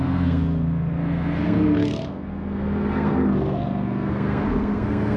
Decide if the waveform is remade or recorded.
remade